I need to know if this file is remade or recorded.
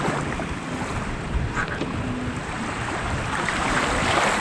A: remade